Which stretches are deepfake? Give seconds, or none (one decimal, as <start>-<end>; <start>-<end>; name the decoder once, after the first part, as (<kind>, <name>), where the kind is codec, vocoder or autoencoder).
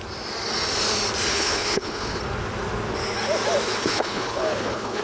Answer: 1.3-2.2 (codec, HILCodec); 3.8-5.0